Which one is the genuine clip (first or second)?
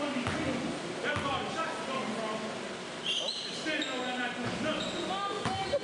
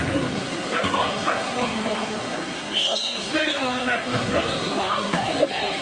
first